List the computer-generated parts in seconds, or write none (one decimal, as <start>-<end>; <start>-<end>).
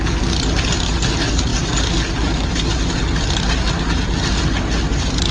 none